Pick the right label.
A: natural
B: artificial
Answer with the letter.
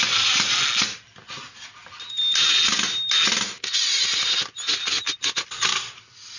A